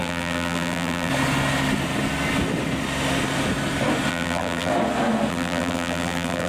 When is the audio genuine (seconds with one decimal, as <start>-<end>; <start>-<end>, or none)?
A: 1.1-4.1; 4.7-5.3